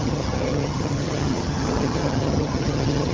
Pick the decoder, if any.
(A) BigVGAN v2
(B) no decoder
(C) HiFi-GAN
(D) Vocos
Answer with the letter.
C